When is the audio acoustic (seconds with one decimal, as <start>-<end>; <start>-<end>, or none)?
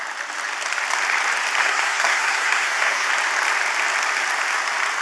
0.0-1.6; 3.1-5.0